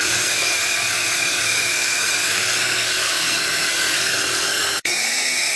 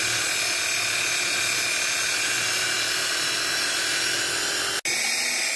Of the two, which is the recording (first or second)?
second